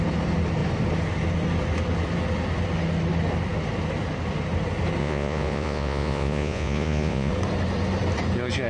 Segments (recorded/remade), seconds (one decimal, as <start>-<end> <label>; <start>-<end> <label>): 0.0-5.0 recorded; 5.0-7.3 remade; 7.3-8.7 recorded